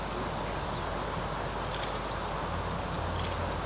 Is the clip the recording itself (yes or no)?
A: yes